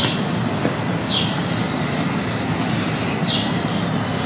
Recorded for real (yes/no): yes